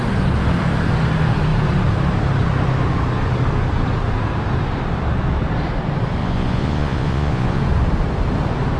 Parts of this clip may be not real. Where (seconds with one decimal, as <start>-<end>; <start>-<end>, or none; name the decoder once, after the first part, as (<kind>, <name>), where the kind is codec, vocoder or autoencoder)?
6.2-7.6 (vocoder, Vocos)